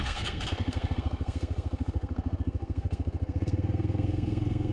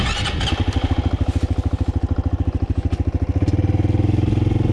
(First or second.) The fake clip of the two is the first